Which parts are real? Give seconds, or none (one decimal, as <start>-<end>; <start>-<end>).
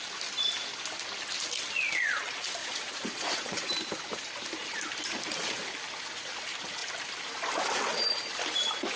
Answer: 0.0-2.6; 3.7-9.0